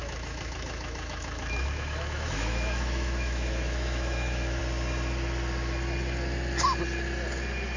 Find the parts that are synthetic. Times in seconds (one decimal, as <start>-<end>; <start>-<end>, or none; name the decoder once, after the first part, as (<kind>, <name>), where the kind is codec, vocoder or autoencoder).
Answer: 0.0-4.6 (autoencoder, DAC-VAE)